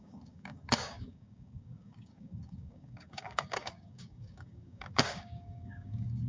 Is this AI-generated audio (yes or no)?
yes